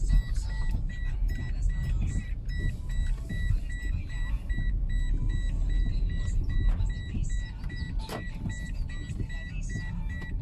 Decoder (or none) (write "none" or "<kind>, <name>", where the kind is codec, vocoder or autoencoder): none